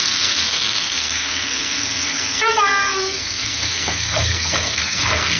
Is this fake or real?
fake